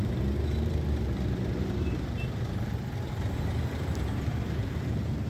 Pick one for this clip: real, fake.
fake